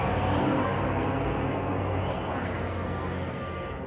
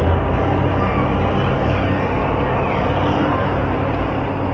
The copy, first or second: first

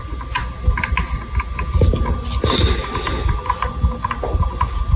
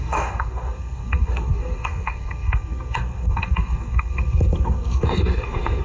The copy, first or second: second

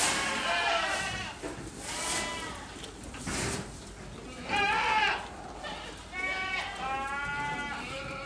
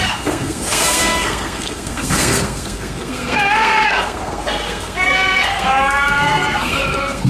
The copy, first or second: second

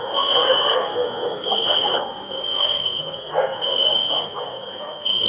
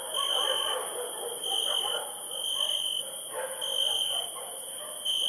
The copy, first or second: first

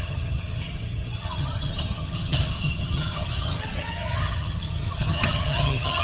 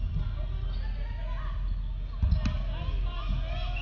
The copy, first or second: first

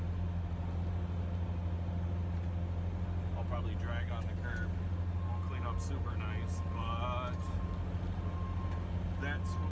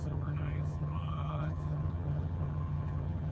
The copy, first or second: second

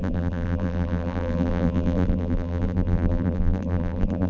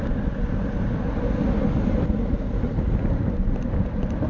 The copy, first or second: first